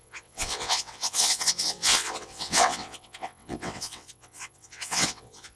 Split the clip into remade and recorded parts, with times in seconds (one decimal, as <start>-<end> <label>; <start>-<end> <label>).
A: 0.0-5.6 remade